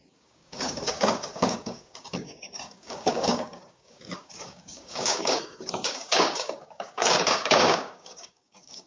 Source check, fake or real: fake